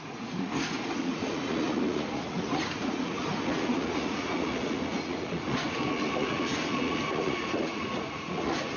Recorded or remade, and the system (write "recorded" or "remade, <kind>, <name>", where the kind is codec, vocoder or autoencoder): remade, vocoder, Vocos